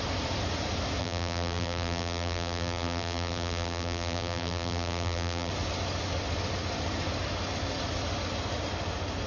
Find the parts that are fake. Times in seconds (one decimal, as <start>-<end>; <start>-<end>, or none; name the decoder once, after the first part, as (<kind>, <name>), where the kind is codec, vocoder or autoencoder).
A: 1.0-5.5 (vocoder, BigVGAN v2)